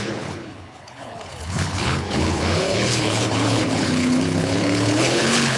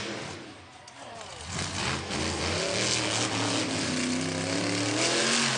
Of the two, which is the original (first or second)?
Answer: second